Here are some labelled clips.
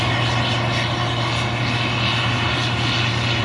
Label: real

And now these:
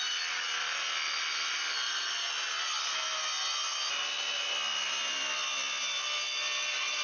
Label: real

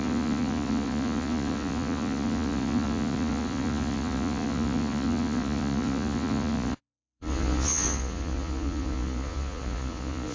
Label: fake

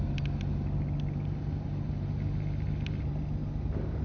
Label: real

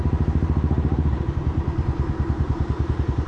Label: fake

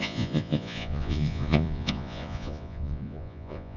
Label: fake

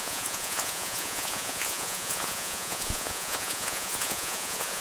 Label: fake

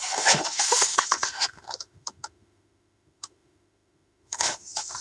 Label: fake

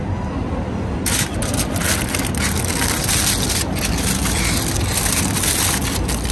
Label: real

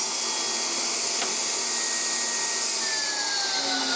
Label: real